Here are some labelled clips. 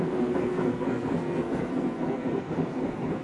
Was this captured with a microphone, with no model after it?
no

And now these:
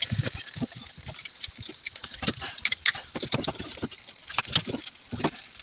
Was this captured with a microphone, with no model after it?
yes